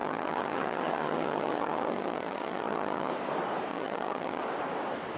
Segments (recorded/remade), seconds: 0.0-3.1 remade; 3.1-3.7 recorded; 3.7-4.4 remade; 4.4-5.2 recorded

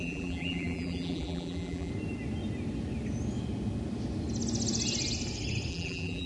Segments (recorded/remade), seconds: 0.0-1.9 remade; 1.9-5.7 recorded; 5.7-6.3 remade

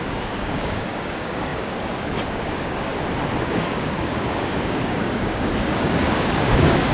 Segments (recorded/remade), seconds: 0.0-2.9 remade; 2.9-3.4 recorded; 3.4-6.9 remade

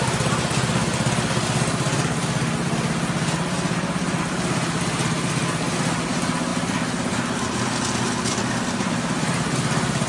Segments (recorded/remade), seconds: 0.0-10.1 recorded

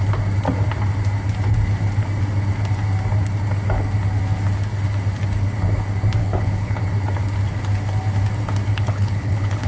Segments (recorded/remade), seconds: 0.0-6.2 recorded; 6.2-6.8 remade; 6.8-8.7 recorded; 8.7-9.7 remade

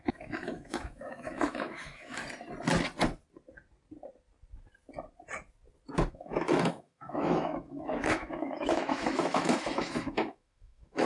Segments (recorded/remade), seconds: 0.0-2.2 remade; 2.2-6.1 recorded; 6.1-11.1 remade